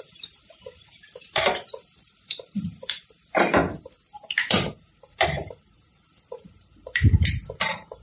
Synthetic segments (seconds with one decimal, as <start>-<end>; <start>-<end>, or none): 0.0-3.6; 4.3-8.0